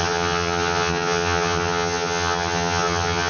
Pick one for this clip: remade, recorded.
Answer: remade